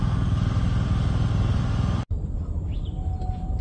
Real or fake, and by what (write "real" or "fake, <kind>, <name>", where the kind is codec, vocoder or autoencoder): real